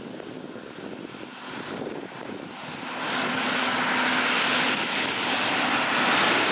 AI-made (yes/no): no